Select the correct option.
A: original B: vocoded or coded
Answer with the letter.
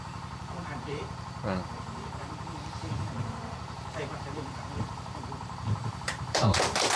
B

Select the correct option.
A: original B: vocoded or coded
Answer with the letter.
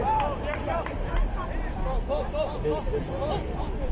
A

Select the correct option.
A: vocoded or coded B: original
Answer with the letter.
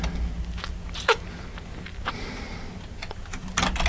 B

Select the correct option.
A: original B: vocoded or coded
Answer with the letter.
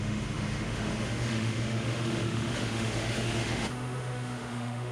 B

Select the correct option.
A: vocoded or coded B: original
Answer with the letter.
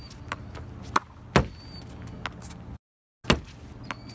B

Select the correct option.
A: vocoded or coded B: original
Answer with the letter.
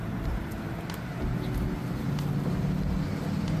B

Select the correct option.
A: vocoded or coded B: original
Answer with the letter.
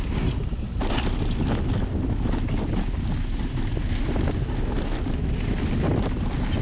B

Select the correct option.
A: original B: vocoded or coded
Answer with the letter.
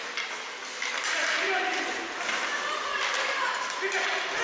A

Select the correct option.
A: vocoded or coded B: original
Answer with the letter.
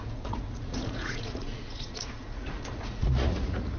A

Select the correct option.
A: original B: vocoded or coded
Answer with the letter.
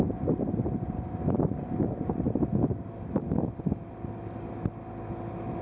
A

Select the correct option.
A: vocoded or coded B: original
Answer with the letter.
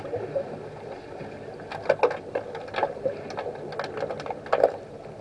B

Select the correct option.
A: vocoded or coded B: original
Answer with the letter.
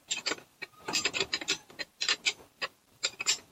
A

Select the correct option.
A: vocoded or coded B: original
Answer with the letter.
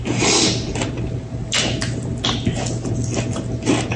B